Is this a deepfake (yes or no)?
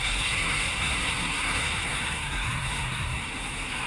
yes